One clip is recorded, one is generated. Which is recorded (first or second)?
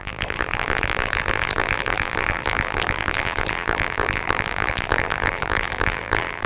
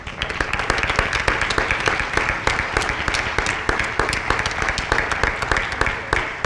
second